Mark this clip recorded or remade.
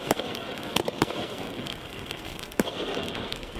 remade